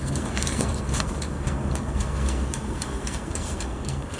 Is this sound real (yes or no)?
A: no